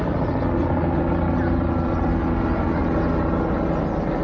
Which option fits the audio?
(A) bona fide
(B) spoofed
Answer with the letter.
A